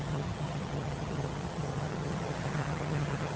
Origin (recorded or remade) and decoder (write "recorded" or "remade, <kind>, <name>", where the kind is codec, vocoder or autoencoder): remade, vocoder, HiFi-GAN